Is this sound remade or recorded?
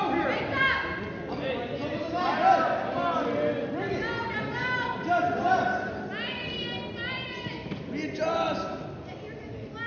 recorded